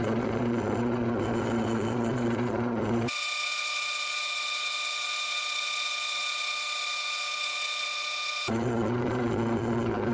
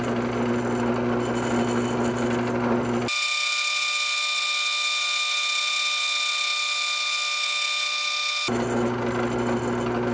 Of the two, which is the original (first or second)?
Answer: second